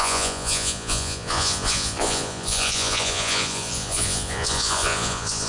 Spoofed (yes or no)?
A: yes